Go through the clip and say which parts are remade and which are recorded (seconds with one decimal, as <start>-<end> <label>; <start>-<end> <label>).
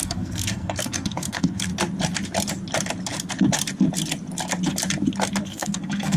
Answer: 0.0-1.7 remade; 1.7-5.4 recorded; 5.4-6.2 remade